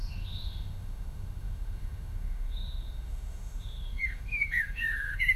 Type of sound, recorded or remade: remade